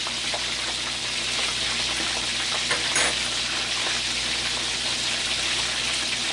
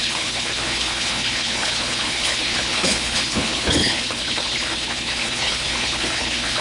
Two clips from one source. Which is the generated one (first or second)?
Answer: second